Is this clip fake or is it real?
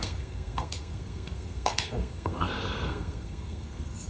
fake